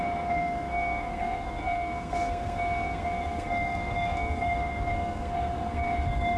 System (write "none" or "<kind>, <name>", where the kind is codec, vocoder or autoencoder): codec, SNAC